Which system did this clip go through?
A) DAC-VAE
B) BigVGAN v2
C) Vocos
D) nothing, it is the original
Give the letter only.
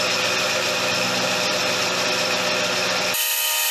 D